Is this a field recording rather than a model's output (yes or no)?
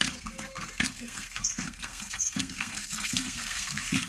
no